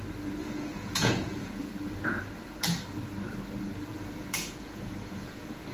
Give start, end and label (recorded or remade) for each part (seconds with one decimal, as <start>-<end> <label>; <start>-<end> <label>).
0.0-0.4 recorded; 0.4-1.7 remade; 1.7-3.9 recorded; 3.9-5.7 remade